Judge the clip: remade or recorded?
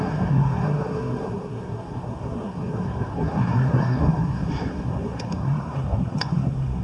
remade